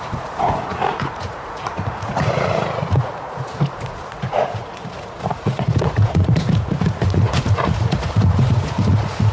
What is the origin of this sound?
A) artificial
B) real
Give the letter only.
A